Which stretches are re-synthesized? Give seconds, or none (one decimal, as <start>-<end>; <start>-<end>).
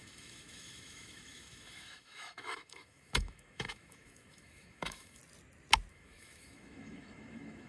0.0-5.2; 5.9-7.7